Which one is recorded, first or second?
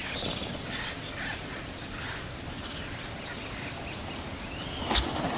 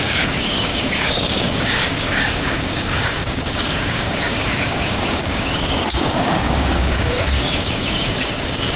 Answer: first